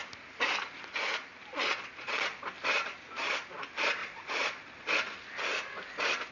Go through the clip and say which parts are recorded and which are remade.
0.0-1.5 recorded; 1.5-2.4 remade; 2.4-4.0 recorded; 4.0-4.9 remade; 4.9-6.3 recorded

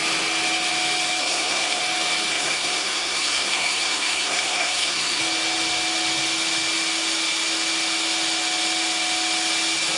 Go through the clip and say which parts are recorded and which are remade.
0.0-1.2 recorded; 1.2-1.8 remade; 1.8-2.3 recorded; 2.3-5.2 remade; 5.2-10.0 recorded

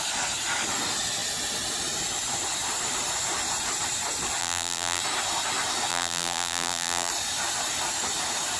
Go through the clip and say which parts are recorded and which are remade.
0.0-4.4 recorded; 4.4-5.0 remade; 5.0-5.9 recorded; 5.9-7.1 remade; 7.1-8.6 recorded